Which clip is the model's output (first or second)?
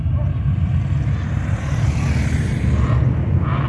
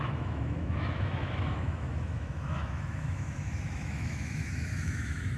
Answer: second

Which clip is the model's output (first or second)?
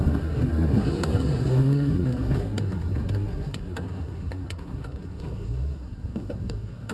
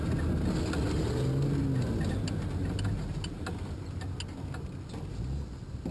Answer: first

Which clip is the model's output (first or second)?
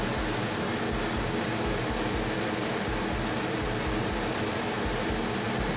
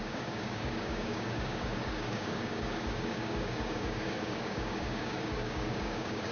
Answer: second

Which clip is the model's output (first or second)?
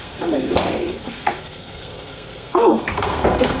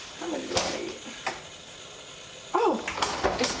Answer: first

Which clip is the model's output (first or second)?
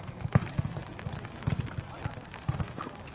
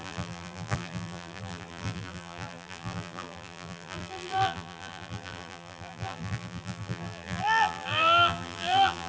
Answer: second